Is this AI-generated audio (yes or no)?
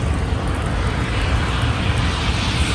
no